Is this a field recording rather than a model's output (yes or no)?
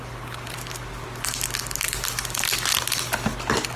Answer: yes